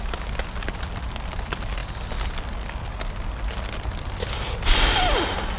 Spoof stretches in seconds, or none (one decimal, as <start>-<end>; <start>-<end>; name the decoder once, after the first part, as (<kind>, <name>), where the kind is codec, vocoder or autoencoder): none